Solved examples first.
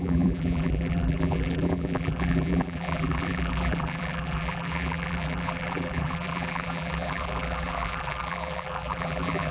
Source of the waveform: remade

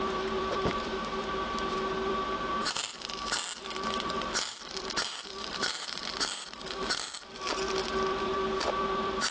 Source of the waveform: remade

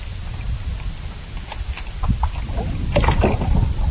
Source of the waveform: recorded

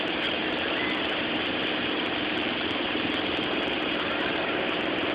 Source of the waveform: remade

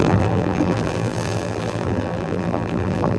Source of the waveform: remade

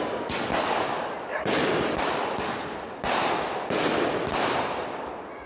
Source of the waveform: remade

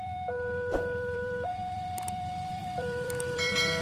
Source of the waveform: remade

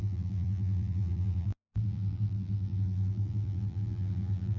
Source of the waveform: remade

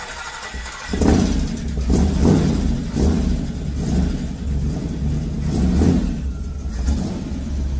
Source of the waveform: recorded